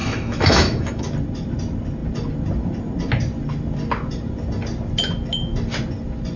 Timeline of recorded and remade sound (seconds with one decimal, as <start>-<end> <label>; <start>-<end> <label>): 0.0-1.0 remade; 1.0-6.4 recorded